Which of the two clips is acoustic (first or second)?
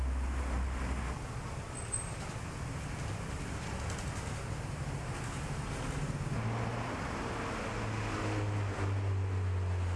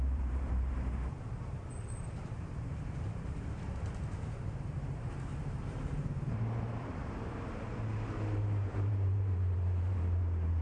first